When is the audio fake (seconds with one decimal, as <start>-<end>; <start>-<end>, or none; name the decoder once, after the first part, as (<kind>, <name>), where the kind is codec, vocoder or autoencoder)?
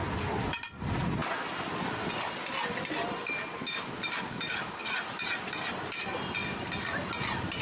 none